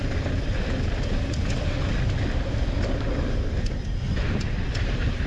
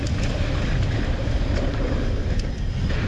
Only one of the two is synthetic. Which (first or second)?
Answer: second